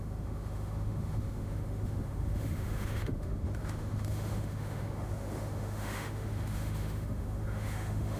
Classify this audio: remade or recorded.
remade